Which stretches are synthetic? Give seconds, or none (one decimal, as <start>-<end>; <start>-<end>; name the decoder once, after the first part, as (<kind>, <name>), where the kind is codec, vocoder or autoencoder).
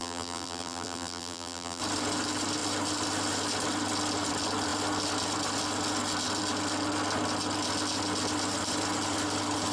0.0-1.8 (vocoder, BigVGAN v2)